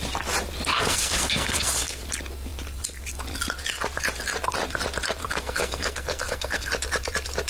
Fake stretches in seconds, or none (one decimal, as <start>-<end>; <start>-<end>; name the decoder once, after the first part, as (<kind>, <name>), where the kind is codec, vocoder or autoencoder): 0.7-2.0 (codec, SNAC); 5.2-6.7